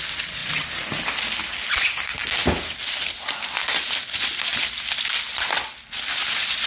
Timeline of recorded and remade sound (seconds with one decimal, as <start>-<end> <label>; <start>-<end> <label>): 0.0-0.4 recorded; 0.4-0.9 remade; 0.9-6.7 recorded